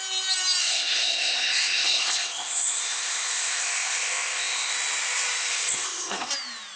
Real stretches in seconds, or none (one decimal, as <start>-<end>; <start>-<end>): 0.0-0.6; 4.7-5.5; 6.3-6.8